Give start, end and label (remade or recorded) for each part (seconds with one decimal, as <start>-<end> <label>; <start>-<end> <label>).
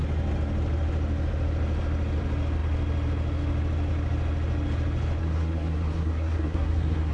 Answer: 0.0-5.2 recorded; 5.2-7.1 remade